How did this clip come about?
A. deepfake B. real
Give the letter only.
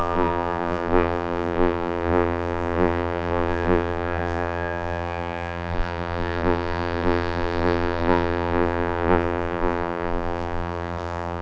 A